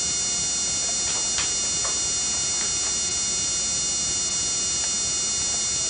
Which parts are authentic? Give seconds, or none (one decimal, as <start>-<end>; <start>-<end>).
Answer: 0.0-5.9